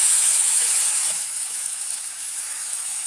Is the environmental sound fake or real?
fake